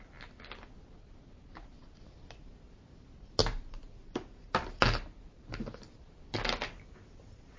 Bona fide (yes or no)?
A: yes